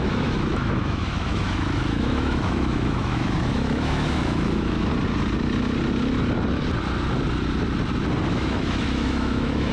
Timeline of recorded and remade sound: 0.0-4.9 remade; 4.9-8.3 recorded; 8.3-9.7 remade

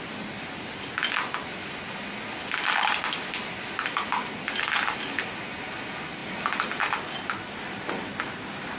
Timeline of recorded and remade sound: 0.0-8.8 recorded

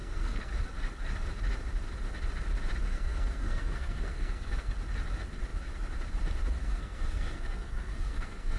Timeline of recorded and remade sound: 0.0-0.5 remade; 0.5-2.9 recorded; 2.9-4.7 remade; 4.7-6.6 recorded; 6.6-8.6 remade

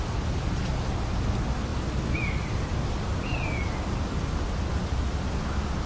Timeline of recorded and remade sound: 0.0-5.9 recorded

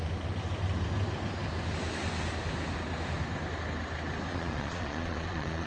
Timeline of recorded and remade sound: 0.0-4.3 recorded; 4.3-5.7 remade